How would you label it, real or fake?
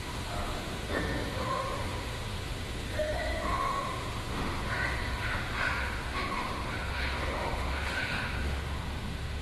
fake